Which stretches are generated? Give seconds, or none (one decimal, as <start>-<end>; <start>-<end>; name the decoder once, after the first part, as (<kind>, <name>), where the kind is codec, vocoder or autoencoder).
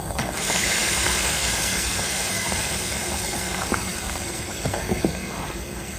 0.0-6.0 (codec, SNAC)